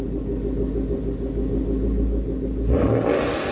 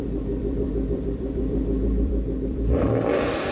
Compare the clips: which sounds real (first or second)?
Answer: first